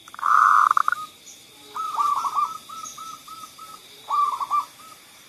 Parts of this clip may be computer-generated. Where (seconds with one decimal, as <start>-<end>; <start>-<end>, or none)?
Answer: 0.0-0.8; 2.1-5.3